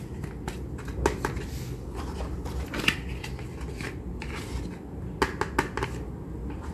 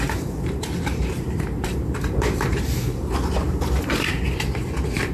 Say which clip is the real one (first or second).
first